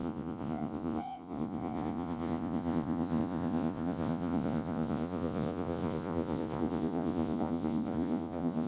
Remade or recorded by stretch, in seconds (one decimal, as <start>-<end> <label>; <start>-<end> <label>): 0.0-8.7 remade